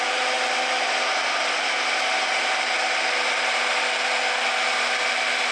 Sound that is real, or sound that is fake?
real